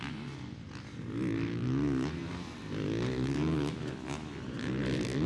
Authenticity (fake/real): real